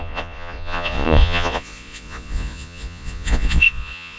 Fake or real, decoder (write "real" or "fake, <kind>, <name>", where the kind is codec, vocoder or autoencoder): fake, vocoder, Vocos